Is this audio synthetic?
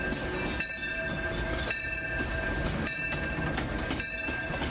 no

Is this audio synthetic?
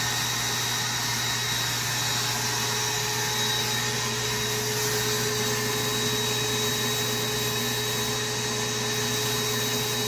no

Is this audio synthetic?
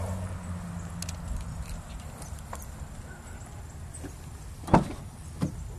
no